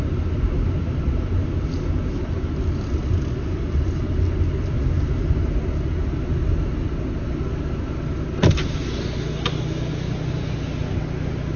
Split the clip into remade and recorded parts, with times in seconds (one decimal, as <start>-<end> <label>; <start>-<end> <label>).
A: 0.0-0.5 recorded; 0.5-1.7 remade; 1.7-11.6 recorded